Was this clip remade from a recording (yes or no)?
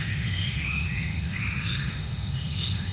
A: yes